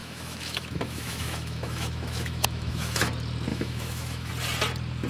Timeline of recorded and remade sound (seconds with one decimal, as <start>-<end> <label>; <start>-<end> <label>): 0.0-3.1 remade; 3.1-3.5 recorded; 3.5-4.3 remade; 4.3-5.1 recorded